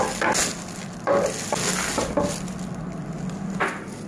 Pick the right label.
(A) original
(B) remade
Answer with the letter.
A